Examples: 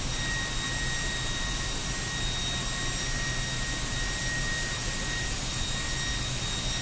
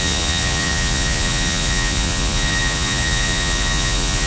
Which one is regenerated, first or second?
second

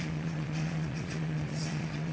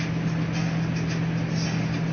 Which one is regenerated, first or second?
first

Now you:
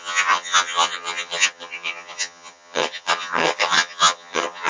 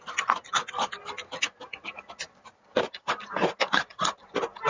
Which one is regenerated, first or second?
first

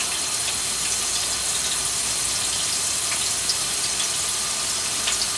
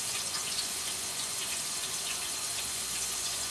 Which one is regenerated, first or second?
second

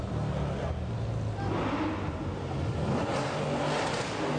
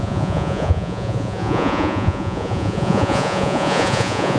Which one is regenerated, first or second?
second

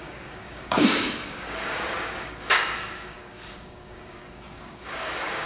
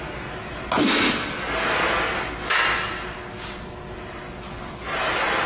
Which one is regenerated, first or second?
first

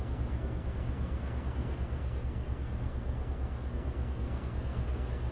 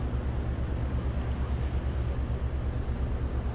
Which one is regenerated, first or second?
first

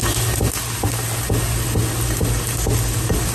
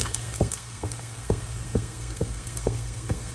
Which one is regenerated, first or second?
second